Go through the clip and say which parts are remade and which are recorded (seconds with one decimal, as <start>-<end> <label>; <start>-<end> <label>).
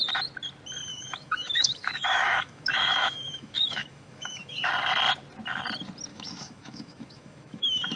0.0-0.9 recorded; 0.9-4.7 remade; 4.7-6.1 recorded; 6.1-8.0 remade